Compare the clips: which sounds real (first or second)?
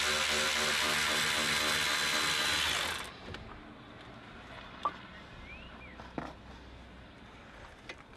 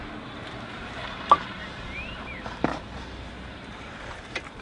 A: first